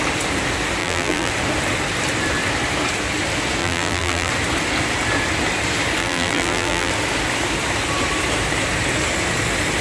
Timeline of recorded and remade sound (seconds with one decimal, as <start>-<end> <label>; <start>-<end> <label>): 0.0-0.8 recorded; 0.8-1.3 remade; 1.3-3.6 recorded; 3.6-4.3 remade; 4.3-6.0 recorded; 6.0-6.9 remade; 6.9-9.8 recorded